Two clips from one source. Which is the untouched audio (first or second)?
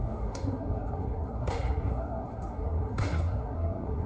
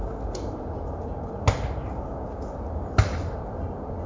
second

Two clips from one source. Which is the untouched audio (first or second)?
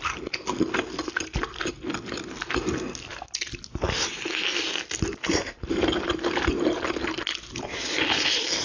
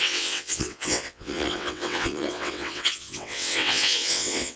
first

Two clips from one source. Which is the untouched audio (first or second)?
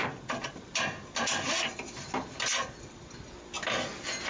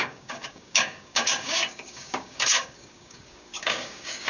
first